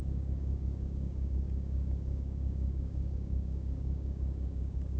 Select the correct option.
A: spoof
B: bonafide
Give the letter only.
A